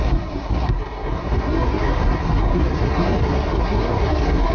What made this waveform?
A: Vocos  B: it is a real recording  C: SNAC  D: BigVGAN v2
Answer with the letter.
C